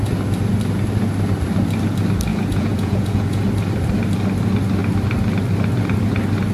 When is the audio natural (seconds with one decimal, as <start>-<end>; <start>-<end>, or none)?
0.0-2.3; 3.4-6.5